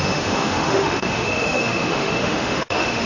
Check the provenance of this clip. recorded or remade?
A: remade